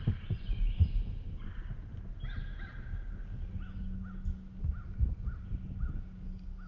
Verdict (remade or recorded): recorded